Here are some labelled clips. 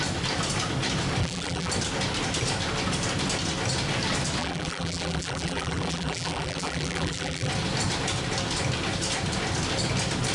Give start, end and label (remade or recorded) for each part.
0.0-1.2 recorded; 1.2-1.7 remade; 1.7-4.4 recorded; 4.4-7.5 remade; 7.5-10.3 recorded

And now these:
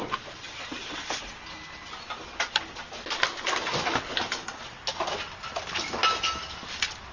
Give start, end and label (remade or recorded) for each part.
0.0-7.1 recorded

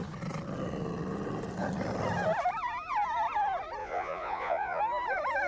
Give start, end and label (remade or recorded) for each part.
0.0-3.8 recorded; 3.8-4.8 remade; 4.8-5.5 recorded

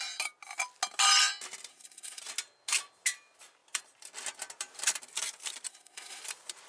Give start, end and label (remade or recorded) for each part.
0.0-1.7 recorded; 1.7-2.2 remade; 2.2-5.7 recorded; 5.7-6.2 remade; 6.2-6.7 recorded

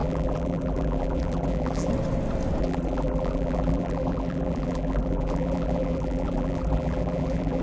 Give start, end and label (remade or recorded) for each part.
0.0-1.9 remade; 1.9-2.6 recorded; 2.6-7.6 remade

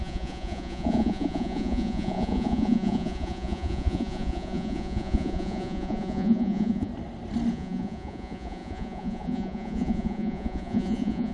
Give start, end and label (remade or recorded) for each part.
0.0-6.9 remade; 6.9-7.5 recorded; 7.5-11.3 remade

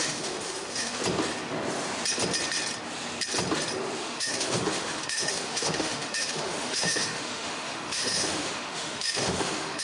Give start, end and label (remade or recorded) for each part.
0.0-1.0 remade; 1.0-4.0 recorded; 4.0-9.8 remade

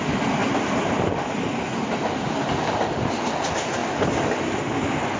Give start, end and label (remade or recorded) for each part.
0.0-5.2 recorded